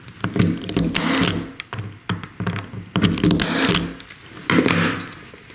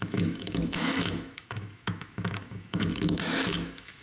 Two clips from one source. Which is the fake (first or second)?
second